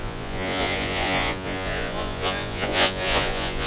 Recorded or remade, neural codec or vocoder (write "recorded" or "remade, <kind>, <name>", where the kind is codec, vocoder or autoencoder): remade, vocoder, Vocos